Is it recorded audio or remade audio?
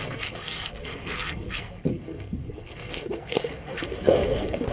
remade